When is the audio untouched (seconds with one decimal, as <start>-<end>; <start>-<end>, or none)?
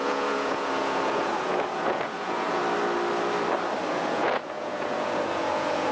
2.6-3.9